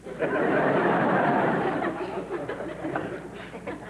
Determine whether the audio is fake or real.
fake